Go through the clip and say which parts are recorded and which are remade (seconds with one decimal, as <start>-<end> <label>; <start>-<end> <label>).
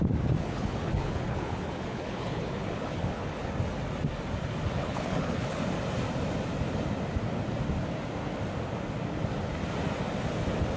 0.0-0.4 recorded; 0.4-3.5 remade; 3.5-4.8 recorded; 4.8-5.6 remade; 5.6-10.8 recorded